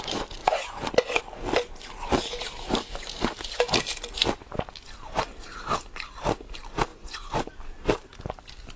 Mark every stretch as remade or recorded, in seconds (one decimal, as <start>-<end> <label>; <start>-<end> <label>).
0.0-0.4 recorded; 0.4-1.2 remade; 1.2-6.9 recorded; 6.9-7.5 remade; 7.5-8.8 recorded